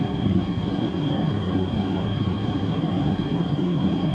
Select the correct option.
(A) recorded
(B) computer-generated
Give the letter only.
B